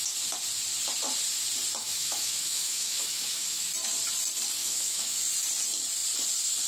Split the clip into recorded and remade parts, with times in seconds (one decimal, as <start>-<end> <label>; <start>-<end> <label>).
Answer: 0.0-1.8 recorded; 1.8-3.7 remade; 3.7-4.6 recorded; 4.6-5.2 remade; 5.2-6.7 recorded

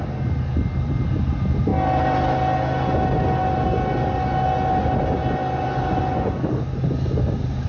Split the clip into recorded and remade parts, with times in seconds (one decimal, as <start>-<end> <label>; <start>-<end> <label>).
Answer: 0.0-7.7 recorded

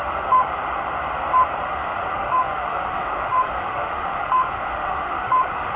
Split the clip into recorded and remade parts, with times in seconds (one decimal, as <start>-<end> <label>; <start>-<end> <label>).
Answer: 0.0-0.5 remade; 0.5-1.7 recorded; 1.7-5.8 remade

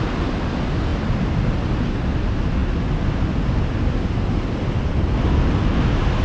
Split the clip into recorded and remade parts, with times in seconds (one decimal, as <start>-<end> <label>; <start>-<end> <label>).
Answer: 0.0-6.2 recorded

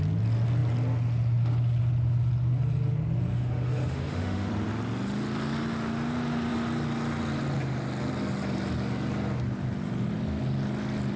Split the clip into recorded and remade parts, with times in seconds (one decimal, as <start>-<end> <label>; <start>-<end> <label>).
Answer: 0.0-3.3 recorded; 3.3-4.5 remade; 4.5-11.2 recorded

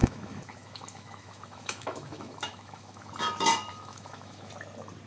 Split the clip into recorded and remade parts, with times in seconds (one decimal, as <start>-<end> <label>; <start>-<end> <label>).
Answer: 0.0-3.1 remade; 3.1-3.7 recorded; 3.7-4.5 remade; 4.5-5.1 recorded